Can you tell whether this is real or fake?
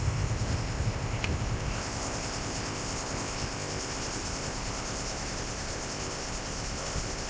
fake